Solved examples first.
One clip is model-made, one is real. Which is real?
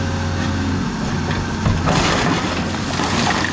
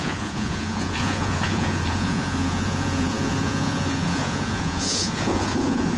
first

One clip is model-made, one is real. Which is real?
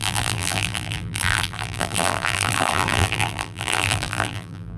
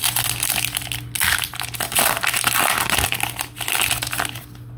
second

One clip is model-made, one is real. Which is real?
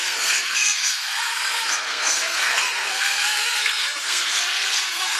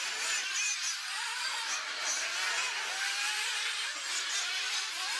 second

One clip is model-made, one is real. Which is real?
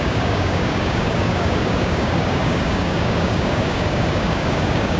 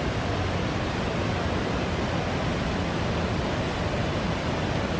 second